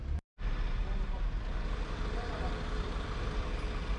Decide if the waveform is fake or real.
real